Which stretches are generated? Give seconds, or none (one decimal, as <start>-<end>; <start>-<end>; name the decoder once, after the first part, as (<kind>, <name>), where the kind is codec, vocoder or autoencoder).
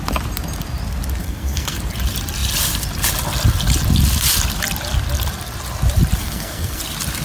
1.2-1.8 (codec, SNAC); 6.2-6.8